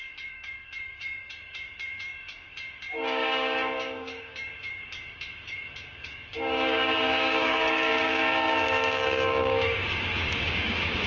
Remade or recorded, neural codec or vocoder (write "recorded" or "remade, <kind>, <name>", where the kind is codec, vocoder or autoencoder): remade, codec, DAC